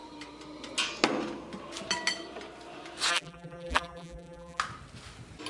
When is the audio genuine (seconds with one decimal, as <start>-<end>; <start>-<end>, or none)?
0.0-3.1; 4.6-5.5